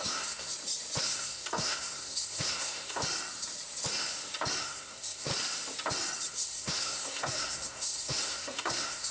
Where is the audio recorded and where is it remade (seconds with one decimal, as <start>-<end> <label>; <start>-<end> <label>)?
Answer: 0.0-0.5 remade; 0.5-1.0 recorded; 1.0-3.0 remade; 3.0-4.6 recorded; 4.6-5.3 remade; 5.3-6.3 recorded; 6.3-9.1 remade